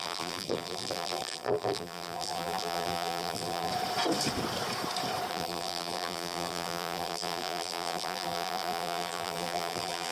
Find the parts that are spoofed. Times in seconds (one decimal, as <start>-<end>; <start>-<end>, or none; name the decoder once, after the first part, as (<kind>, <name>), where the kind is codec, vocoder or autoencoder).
0.0-3.7 (vocoder, BigVGAN v2); 5.3-10.1